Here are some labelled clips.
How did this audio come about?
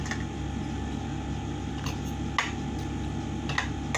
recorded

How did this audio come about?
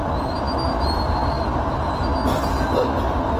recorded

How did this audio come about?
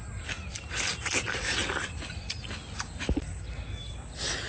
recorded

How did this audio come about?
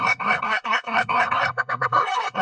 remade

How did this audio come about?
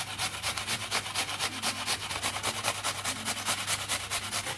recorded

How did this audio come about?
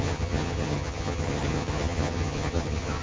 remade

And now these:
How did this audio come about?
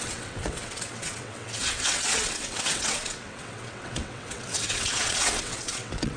remade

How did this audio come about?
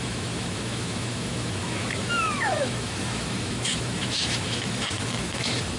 remade